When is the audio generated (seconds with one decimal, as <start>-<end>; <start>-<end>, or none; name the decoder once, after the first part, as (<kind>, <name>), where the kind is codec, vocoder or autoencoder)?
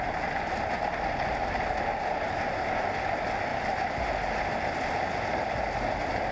none